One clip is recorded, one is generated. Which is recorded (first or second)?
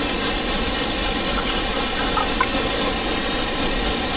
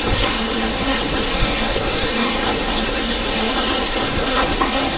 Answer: first